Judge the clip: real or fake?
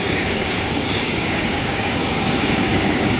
fake